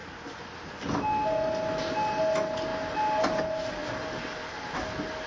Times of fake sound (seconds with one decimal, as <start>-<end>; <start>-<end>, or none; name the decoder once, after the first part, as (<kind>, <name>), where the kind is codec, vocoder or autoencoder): 3.8-4.6 (vocoder, BigVGAN v2)